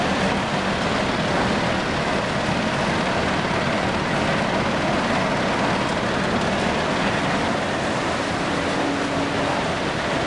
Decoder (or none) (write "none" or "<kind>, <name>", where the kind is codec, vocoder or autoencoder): none